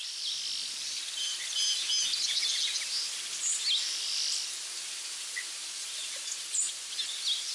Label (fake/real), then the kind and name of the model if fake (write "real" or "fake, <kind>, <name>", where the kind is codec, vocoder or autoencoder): real